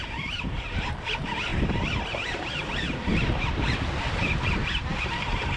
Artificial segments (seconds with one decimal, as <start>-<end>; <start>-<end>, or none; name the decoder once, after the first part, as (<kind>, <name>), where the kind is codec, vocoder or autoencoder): 0.0-5.6 (vocoder, BigVGAN v2)